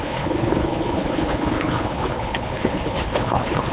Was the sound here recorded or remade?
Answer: remade